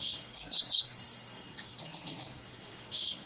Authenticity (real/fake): fake